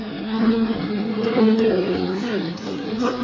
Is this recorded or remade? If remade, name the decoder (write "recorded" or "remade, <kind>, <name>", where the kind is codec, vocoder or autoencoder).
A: remade, codec, SNAC